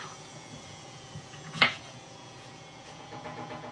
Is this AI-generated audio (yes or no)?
yes